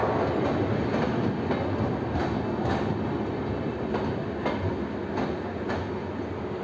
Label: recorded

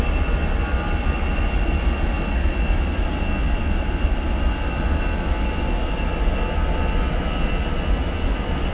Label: recorded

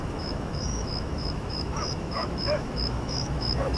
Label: remade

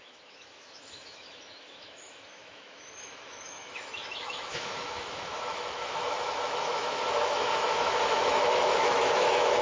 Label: remade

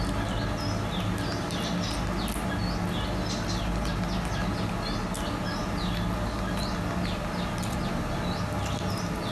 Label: recorded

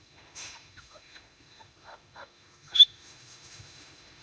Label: remade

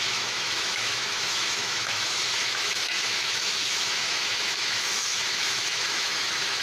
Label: remade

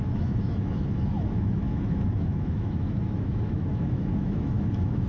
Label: remade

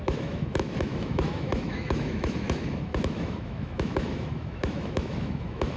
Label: remade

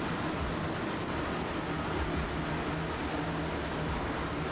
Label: recorded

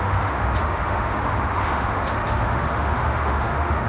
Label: remade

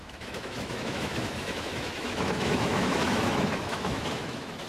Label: remade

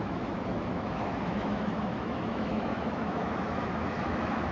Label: remade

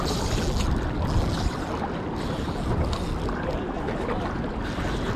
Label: recorded